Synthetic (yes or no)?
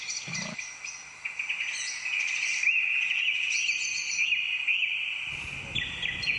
no